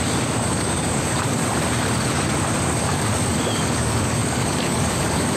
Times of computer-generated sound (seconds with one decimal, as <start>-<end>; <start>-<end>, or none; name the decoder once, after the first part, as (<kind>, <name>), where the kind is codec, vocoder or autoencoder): 0.0-1.4 (codec, DAC); 2.6-5.4